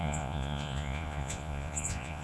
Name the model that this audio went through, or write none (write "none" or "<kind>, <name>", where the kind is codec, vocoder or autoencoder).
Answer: vocoder, Vocos